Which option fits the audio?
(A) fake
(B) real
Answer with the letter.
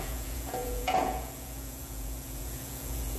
A